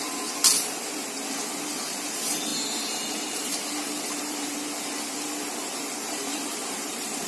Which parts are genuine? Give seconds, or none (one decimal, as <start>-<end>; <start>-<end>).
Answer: 0.4-1.8; 4.5-5.6